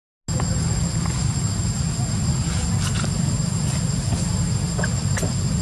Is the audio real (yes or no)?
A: yes